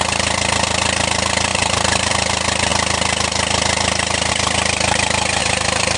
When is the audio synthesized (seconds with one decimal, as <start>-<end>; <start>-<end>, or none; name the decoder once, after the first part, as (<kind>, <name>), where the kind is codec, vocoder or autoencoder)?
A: 1.5-2.1 (vocoder, BigVGAN v2); 5.4-6.0